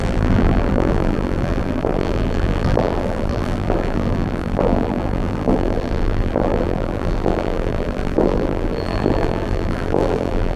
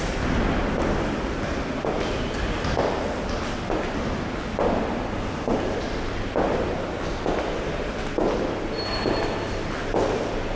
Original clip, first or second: second